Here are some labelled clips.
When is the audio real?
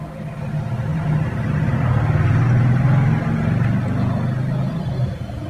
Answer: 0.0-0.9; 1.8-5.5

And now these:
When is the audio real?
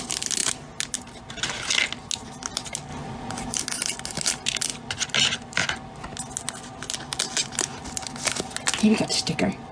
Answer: 0.0-2.9; 3.6-9.7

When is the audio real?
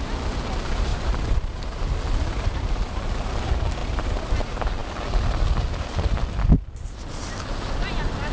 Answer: 0.0-0.9; 1.8-3.8; 4.3-8.3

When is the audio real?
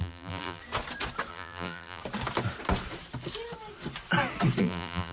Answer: 0.6-1.3; 2.0-4.6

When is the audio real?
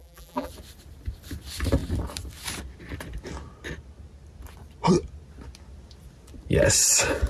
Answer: 0.5-7.3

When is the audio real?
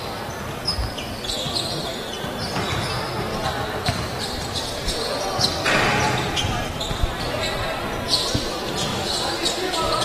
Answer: 0.0-3.3; 3.9-5.9; 7.4-10.0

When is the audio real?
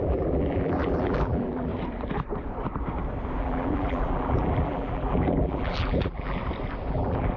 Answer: 1.7-3.4; 6.4-6.9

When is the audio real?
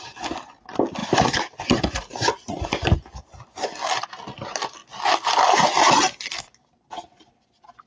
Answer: 0.0-7.9